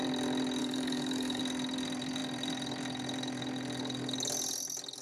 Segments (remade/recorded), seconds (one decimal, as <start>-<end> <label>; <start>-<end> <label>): 0.0-0.6 recorded; 0.6-1.4 remade; 1.4-5.0 recorded